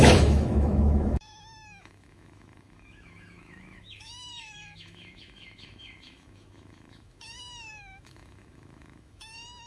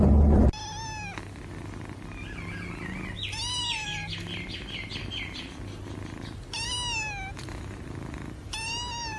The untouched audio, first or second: second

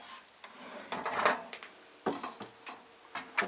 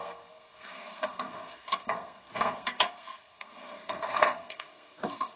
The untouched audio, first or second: first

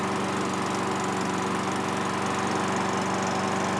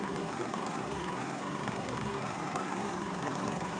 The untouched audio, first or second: first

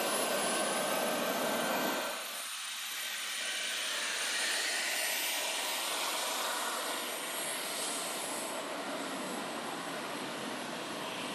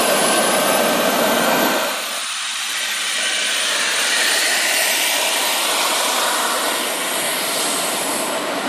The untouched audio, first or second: first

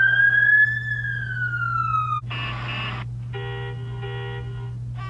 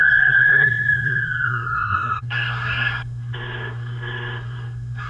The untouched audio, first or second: first